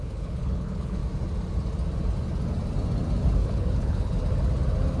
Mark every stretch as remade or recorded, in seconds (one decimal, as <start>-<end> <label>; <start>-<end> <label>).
0.0-1.0 remade; 1.0-3.4 recorded; 3.4-4.2 remade; 4.2-5.0 recorded